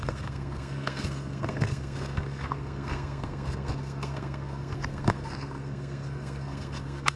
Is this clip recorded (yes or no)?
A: no